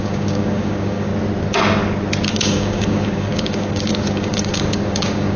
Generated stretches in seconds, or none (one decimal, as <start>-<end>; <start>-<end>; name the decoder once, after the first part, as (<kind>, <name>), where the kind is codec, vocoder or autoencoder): 0.0-1.1 (codec, DAC); 2.3-5.4